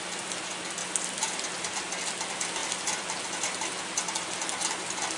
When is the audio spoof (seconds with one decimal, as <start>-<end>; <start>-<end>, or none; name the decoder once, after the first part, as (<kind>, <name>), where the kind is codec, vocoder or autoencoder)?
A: none